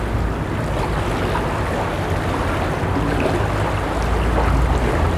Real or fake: real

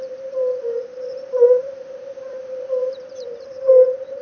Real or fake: fake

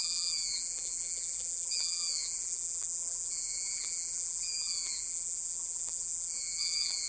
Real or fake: fake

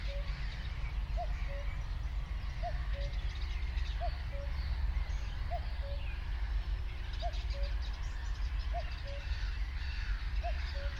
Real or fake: real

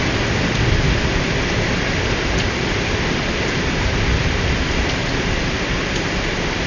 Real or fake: fake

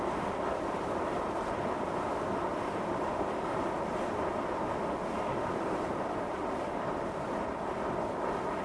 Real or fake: fake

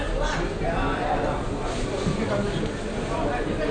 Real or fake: real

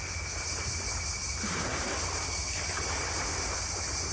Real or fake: real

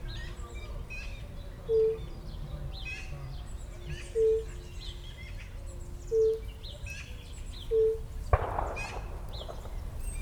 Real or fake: real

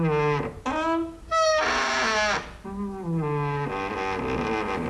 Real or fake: real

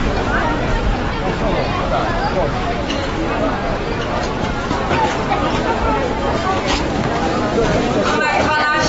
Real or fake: real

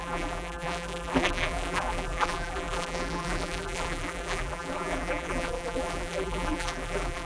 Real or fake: fake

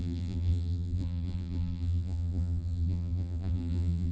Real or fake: fake